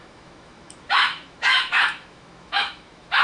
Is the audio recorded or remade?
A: remade